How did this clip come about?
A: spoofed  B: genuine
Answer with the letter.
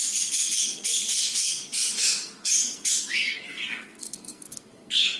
A